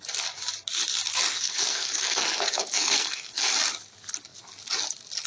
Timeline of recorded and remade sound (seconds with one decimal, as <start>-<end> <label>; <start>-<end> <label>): 0.0-1.3 recorded; 1.3-3.5 remade; 3.5-5.3 recorded